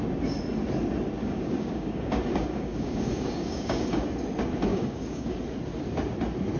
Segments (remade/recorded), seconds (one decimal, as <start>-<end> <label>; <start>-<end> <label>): 0.0-1.2 recorded; 1.2-4.1 remade; 4.1-4.7 recorded; 4.7-5.4 remade; 5.4-6.6 recorded